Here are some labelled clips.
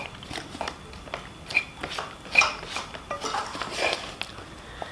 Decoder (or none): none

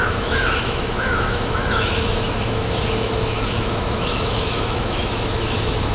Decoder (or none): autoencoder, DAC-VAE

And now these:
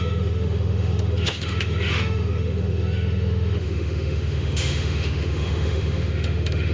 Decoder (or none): autoencoder, DAC-VAE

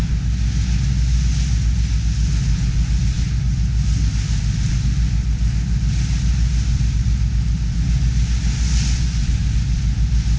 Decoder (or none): none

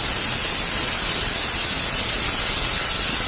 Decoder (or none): none